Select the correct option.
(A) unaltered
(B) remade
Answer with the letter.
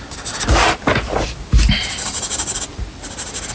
A